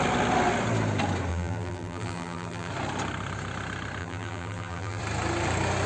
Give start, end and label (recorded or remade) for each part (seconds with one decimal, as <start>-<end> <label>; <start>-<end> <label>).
0.0-1.3 recorded; 1.3-2.7 remade; 2.7-4.0 recorded; 4.0-5.0 remade; 5.0-5.9 recorded